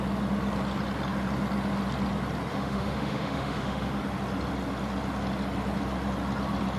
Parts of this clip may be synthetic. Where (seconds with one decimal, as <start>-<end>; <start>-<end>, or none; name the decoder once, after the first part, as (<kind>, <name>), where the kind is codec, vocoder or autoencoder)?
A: 2.5-4.0 (autoencoder, DAC-VAE)